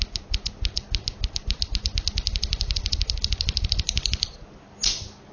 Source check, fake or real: real